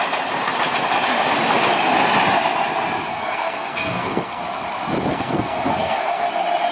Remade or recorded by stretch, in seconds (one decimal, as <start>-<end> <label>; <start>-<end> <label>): 0.0-3.1 recorded; 3.1-4.4 remade; 4.4-5.1 recorded; 5.1-6.3 remade; 6.3-6.7 recorded